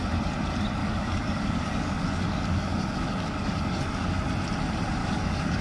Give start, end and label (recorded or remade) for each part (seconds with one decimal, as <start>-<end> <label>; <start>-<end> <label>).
0.0-0.8 recorded; 0.8-4.2 remade; 4.2-5.0 recorded; 5.0-5.6 remade